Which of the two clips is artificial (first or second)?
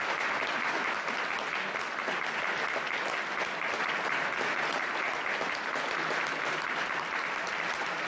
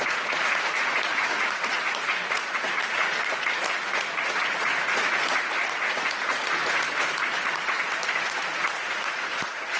second